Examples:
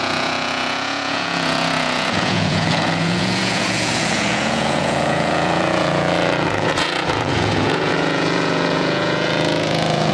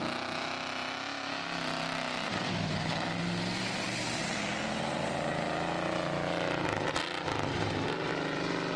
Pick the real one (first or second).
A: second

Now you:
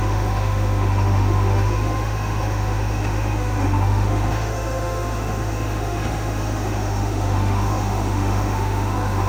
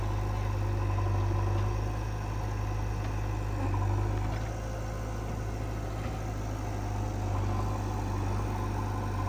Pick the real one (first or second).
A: second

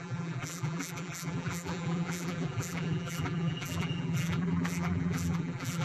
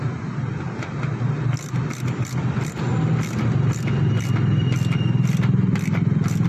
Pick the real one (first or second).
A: second